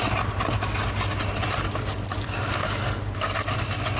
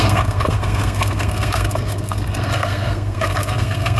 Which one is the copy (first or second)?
second